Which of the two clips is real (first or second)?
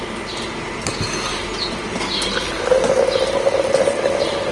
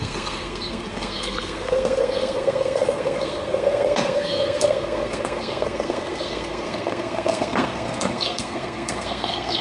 first